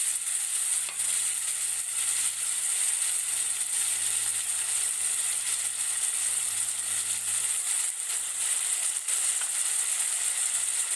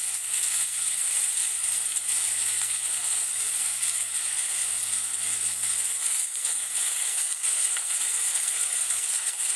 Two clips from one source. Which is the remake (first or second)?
second